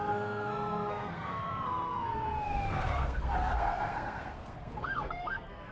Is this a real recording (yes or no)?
no